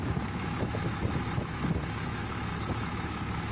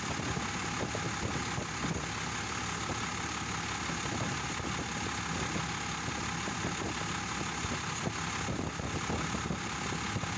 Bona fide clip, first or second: second